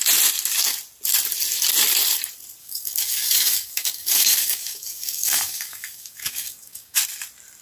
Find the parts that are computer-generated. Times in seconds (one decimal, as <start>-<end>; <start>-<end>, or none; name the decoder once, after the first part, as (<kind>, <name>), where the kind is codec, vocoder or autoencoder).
2.6-7.0 (codec, DAC)